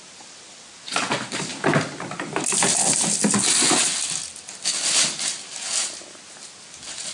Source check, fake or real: real